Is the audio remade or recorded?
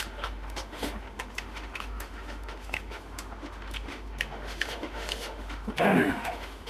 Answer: remade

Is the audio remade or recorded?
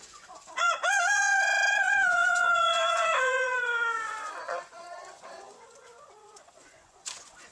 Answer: remade